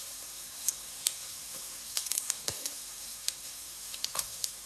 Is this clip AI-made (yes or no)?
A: yes